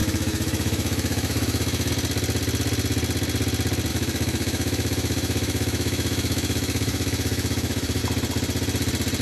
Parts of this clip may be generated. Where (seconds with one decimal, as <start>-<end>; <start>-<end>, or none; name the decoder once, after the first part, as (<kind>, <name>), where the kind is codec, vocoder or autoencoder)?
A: 0.0-1.9 (autoencoder, DAC-VAE); 3.9-8.0